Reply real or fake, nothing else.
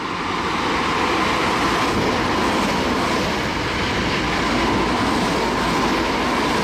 real